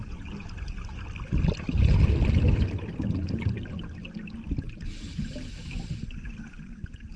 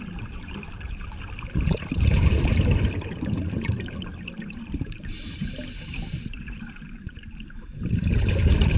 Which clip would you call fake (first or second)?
second